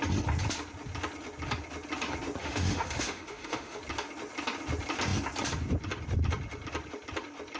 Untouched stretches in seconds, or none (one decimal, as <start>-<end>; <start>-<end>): 0.0-2.4; 3.8-7.6